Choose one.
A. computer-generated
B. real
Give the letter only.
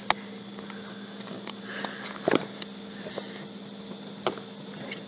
B